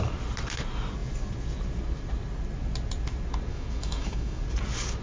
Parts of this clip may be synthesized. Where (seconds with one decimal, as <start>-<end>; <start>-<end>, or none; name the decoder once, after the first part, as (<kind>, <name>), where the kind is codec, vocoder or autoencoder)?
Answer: 3.5-4.4 (autoencoder, DAC-VAE)